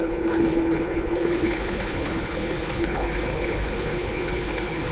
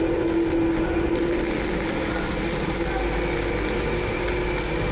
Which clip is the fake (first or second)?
first